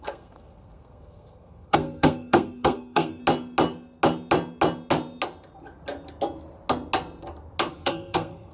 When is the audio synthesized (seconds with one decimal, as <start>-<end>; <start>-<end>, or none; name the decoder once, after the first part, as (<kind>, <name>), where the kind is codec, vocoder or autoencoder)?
0.0-3.2 (codec, SNAC); 7.7-8.5